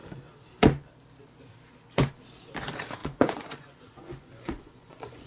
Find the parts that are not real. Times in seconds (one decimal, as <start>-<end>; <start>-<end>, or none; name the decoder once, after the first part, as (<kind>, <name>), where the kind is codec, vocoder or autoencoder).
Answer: 3.0-5.3 (vocoder, Vocos)